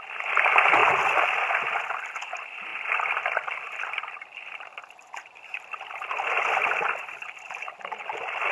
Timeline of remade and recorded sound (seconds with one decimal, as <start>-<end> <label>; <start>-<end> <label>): 0.0-2.7 recorded; 2.7-6.3 remade; 6.3-7.0 recorded; 7.0-8.0 remade; 8.0-8.5 recorded